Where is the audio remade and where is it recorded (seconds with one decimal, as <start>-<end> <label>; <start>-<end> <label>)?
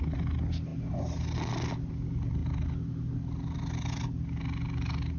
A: 0.0-5.2 recorded